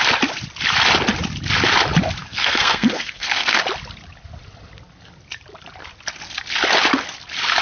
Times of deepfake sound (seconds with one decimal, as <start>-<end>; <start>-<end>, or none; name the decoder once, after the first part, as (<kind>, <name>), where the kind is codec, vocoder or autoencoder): 2.2-3.6 (codec, SNAC)